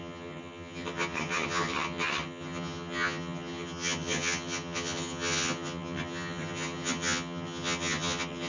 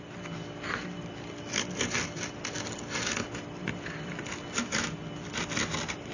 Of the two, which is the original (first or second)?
second